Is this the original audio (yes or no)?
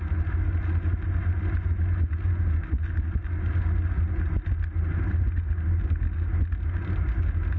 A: yes